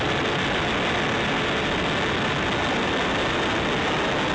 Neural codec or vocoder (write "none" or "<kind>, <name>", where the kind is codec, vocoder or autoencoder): none